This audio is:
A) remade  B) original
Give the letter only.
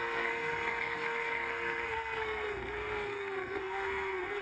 A